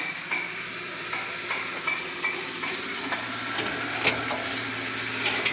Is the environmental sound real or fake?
real